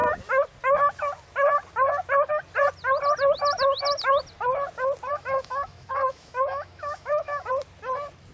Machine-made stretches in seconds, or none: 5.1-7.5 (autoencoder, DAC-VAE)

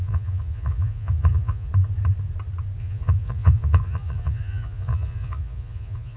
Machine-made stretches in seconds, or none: 0.0-1.7 (vocoder, Vocos); 2.8-6.2

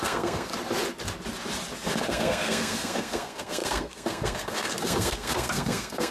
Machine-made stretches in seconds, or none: 0.0-0.5 (codec, SNAC); 1.9-6.1

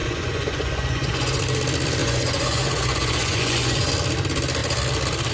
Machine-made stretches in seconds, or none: 0.0-1.4 (vocoder, Vocos); 2.0-3.9

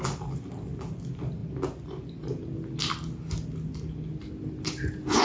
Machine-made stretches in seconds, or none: none

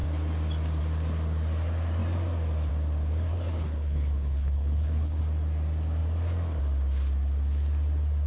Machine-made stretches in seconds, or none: 3.3-5.2 (codec, HILCodec)